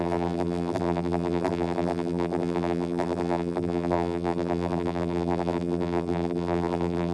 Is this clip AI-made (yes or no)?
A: yes